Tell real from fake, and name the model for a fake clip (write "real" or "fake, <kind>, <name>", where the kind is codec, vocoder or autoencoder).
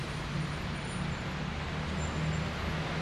real